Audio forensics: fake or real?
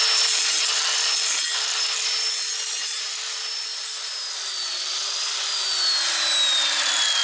real